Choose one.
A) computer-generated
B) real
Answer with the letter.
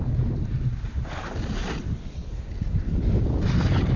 B